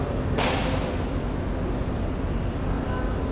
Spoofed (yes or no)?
no